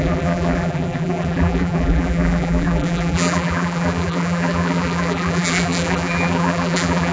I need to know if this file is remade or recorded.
remade